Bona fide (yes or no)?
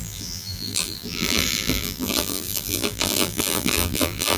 no